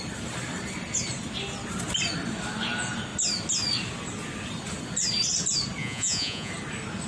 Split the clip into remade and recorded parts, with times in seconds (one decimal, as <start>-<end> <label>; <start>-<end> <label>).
0.0-5.8 recorded; 5.8-6.5 remade; 6.5-7.1 recorded